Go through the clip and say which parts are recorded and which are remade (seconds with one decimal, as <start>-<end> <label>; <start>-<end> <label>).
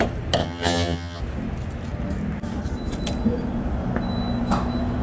0.0-0.4 recorded; 0.4-1.2 remade; 1.2-5.0 recorded